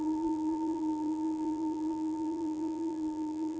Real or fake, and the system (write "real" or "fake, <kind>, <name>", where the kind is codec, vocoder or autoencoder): fake, vocoder, BigVGAN v2